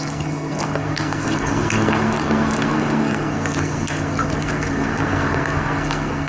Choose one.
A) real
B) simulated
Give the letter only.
B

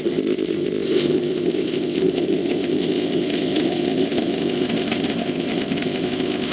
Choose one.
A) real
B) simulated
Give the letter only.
B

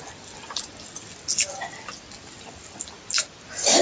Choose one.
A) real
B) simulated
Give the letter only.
A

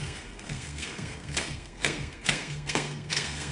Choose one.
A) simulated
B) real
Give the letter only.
A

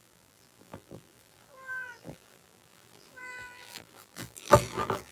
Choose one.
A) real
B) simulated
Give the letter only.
B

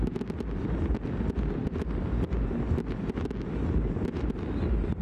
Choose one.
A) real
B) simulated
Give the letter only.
A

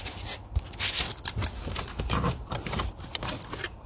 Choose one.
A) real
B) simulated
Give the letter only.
A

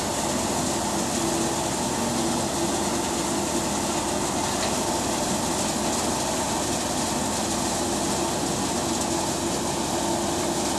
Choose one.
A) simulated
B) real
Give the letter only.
B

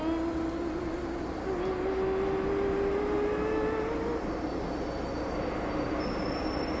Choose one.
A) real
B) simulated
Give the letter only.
A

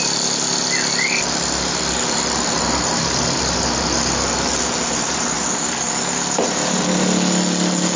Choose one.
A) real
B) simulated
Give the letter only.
A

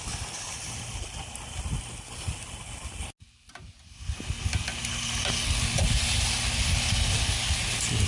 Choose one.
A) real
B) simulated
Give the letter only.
A